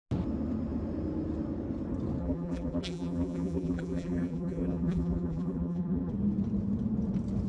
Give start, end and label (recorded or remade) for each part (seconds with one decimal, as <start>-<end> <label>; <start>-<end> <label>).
0.0-2.2 recorded; 2.2-6.1 remade; 6.1-7.5 recorded